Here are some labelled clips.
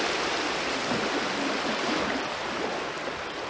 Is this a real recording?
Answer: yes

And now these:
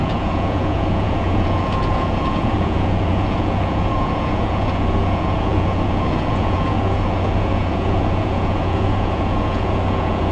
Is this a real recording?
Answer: no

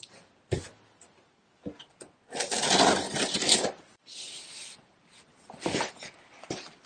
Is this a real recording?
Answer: yes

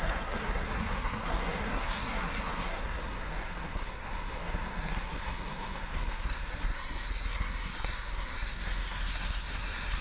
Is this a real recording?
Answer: no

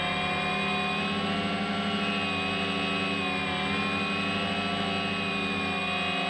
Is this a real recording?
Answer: yes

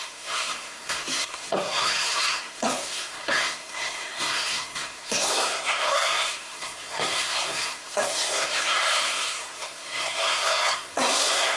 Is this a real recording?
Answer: no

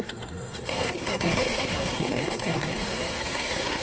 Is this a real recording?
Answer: no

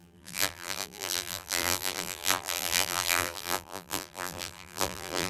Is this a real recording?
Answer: no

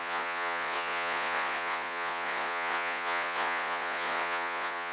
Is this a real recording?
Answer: no